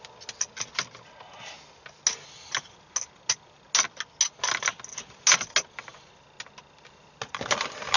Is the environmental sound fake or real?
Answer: real